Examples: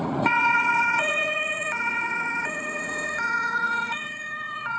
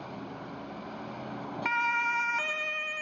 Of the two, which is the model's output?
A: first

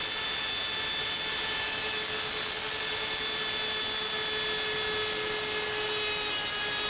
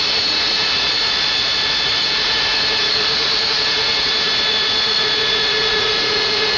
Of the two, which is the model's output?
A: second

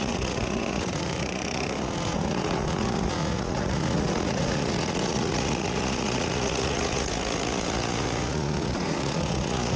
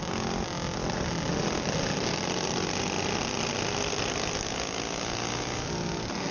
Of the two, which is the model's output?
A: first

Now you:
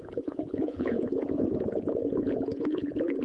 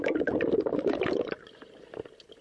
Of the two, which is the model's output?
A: first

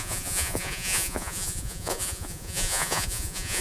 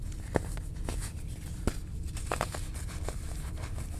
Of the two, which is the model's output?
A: first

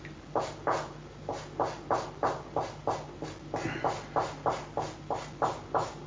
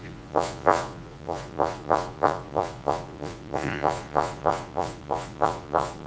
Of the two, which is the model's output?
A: second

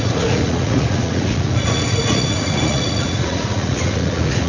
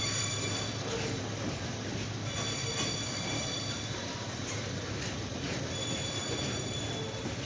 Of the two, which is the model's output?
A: first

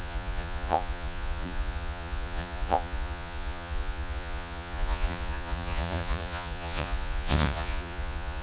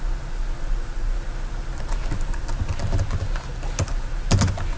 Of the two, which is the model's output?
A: first